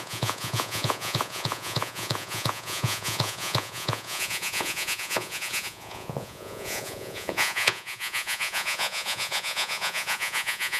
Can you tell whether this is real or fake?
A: fake